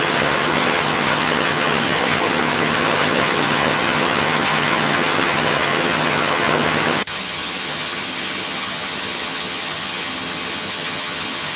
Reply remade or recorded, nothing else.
remade